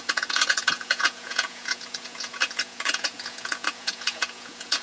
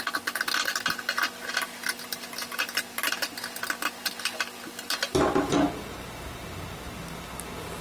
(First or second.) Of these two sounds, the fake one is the first